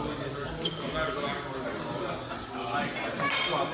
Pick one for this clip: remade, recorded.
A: recorded